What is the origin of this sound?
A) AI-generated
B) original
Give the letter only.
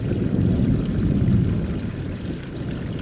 B